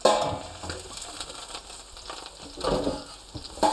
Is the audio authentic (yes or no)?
yes